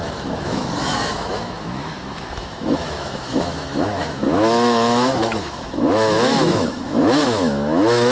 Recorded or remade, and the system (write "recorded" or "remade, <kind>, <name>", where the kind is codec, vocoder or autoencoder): remade, autoencoder, DAC-VAE